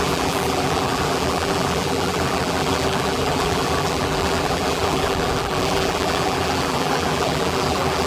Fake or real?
fake